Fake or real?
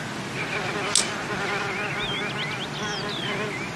real